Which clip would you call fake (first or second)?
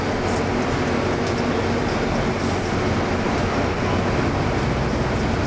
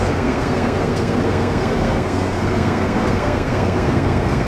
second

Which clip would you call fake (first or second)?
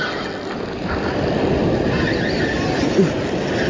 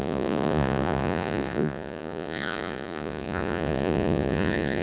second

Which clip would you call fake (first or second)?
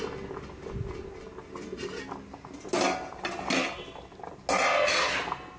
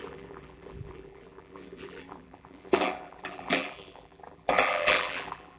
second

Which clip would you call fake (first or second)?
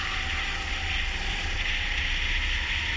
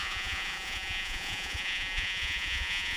second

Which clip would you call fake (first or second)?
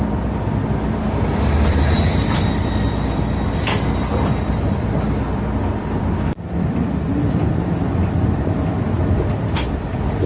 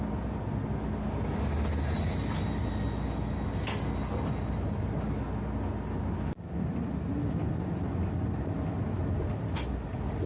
first